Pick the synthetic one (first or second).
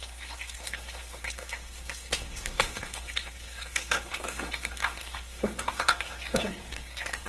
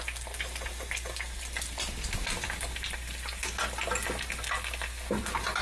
first